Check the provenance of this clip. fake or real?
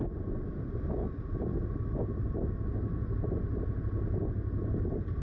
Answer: real